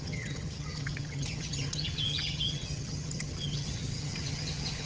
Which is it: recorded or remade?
remade